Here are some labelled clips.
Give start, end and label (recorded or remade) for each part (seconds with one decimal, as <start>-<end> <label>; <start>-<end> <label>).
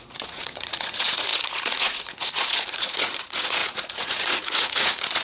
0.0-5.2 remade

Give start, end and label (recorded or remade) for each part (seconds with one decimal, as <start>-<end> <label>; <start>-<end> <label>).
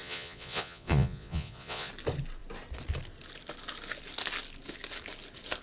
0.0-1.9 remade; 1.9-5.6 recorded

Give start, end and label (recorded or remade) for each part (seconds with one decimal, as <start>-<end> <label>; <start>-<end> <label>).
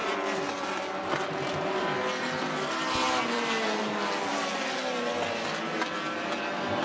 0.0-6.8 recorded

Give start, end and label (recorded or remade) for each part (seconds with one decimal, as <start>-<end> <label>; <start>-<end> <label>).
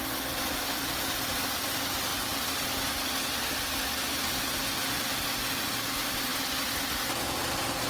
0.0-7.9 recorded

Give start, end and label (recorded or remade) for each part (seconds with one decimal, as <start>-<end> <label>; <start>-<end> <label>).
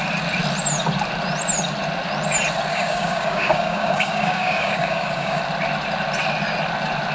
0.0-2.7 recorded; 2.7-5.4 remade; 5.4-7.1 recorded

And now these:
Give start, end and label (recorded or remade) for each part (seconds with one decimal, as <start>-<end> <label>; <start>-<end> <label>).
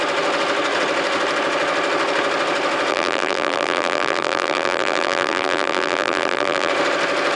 0.0-2.9 recorded; 2.9-6.7 remade; 6.7-7.4 recorded